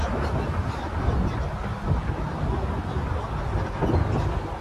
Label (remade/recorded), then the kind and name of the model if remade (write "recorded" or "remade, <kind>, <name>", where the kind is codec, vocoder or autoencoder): recorded